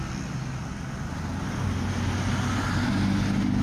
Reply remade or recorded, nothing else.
recorded